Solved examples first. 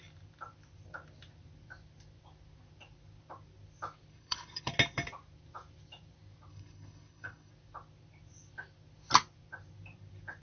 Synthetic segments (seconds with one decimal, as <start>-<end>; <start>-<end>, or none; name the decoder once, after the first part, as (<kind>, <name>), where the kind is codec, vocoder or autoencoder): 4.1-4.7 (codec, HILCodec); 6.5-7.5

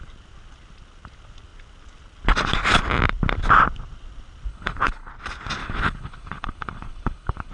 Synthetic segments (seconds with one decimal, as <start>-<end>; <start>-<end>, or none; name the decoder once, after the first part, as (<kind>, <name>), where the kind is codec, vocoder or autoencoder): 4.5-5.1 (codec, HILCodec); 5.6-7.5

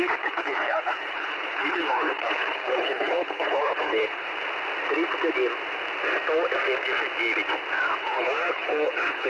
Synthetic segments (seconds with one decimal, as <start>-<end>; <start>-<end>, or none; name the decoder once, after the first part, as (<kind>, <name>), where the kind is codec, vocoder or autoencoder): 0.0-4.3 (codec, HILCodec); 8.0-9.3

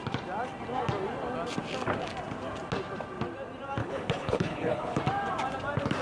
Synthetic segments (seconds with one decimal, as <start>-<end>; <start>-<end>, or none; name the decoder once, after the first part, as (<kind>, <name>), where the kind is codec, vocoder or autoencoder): 3.8-5.0 (codec, HILCodec)

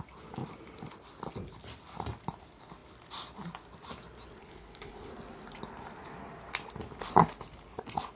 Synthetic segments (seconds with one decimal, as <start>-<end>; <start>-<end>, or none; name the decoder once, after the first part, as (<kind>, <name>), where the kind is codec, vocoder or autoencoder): 4.4-5.1 (codec, HILCodec)